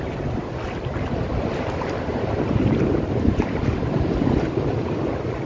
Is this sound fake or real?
real